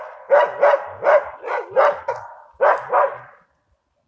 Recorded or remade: recorded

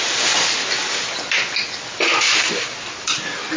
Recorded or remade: recorded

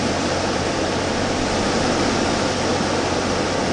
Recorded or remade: recorded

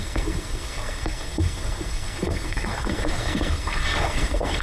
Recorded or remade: remade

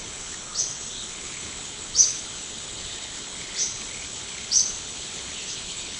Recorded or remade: remade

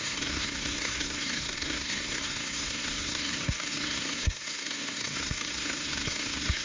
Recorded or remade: remade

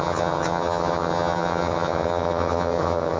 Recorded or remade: remade